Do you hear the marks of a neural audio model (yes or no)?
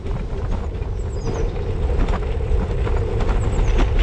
no